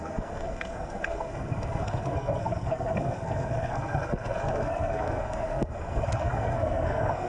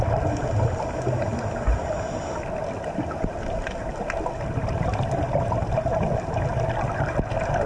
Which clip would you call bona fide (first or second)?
second